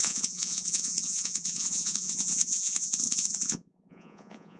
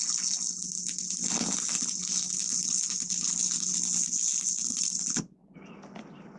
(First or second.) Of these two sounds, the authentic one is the second